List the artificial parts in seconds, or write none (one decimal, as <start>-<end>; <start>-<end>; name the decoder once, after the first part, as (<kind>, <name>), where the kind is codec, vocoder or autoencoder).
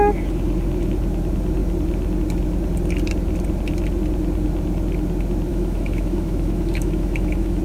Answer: 5.5-7.6 (autoencoder, DAC-VAE)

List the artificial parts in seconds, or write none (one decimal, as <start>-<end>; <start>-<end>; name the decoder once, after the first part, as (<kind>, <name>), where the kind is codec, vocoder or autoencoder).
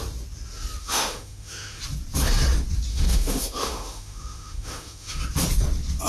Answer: 0.8-1.8 (autoencoder, DAC-VAE); 2.9-5.2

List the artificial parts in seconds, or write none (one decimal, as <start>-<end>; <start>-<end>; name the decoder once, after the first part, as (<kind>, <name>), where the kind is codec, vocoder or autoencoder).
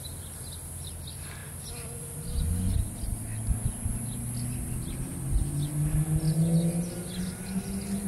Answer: none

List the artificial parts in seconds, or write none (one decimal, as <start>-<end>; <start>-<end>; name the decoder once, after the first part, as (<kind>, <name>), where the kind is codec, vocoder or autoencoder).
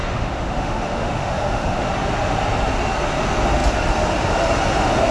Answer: 0.0-1.9 (autoencoder, DAC-VAE)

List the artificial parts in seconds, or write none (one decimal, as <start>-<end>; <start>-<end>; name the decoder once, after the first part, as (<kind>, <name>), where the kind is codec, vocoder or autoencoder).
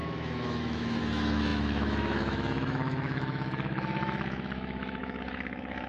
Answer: 0.0-5.9 (autoencoder, DAC-VAE)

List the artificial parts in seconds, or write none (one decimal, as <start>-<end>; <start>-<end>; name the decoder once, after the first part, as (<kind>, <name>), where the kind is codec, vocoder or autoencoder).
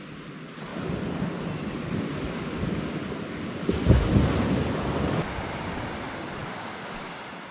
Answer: 6.4-7.1 (autoencoder, DAC-VAE)